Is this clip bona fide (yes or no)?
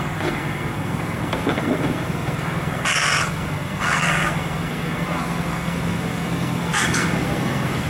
no